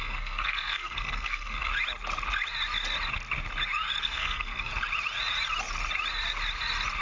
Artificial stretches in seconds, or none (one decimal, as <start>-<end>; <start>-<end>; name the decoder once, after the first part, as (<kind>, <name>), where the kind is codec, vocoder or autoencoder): 0.0-1.7 (codec, SNAC); 4.0-4.7